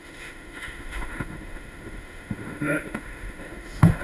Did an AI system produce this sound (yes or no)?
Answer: yes